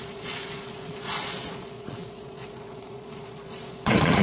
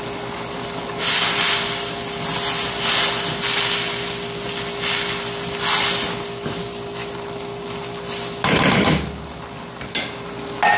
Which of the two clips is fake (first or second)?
first